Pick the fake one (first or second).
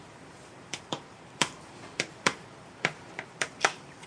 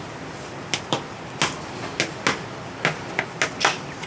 first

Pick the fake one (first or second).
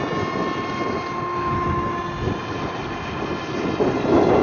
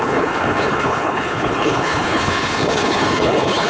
second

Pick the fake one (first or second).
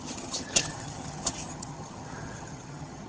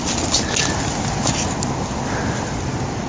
first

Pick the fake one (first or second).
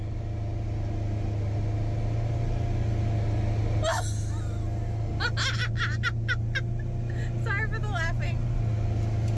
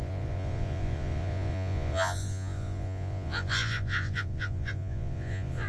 second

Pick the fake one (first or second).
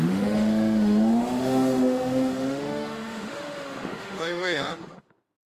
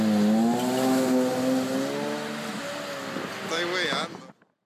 first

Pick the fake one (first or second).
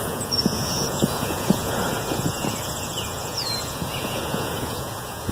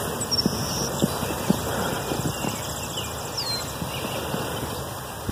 first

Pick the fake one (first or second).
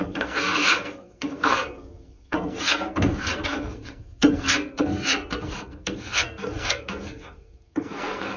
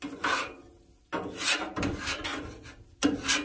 first